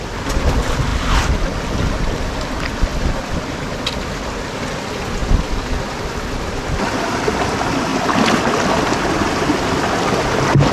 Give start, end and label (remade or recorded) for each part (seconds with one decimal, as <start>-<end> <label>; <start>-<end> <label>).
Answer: 0.0-10.7 recorded